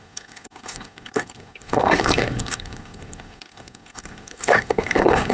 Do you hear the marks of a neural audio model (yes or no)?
yes